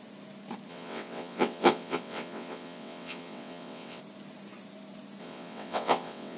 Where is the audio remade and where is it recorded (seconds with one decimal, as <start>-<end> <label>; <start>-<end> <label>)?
0.0-0.7 recorded; 0.7-4.0 remade; 4.0-5.2 recorded; 5.2-6.4 remade